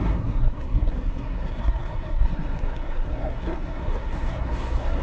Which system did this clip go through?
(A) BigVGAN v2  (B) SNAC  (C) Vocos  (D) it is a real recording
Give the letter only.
B